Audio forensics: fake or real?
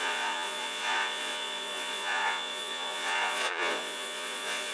fake